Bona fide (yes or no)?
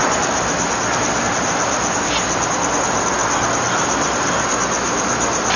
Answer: yes